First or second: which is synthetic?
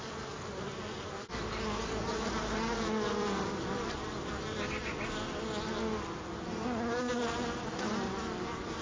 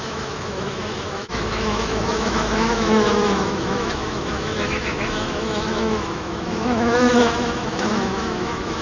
second